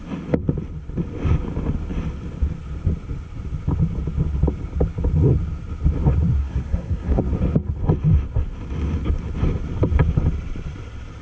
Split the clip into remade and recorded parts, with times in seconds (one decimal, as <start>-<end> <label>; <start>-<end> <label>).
0.0-6.4 recorded; 6.4-7.2 remade; 7.2-11.2 recorded

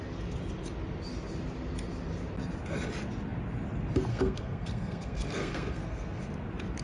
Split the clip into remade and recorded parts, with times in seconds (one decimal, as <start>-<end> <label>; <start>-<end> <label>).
0.0-4.1 recorded; 4.1-6.2 remade; 6.2-6.8 recorded